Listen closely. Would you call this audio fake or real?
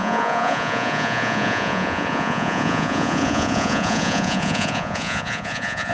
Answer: fake